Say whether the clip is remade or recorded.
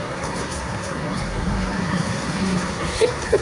remade